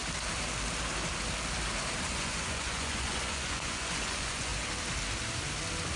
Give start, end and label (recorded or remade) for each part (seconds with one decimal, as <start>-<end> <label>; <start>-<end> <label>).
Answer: 0.0-2.1 recorded; 2.1-4.5 remade; 4.5-6.0 recorded